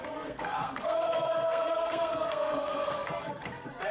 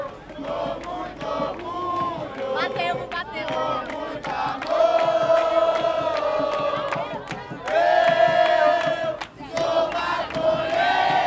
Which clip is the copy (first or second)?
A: first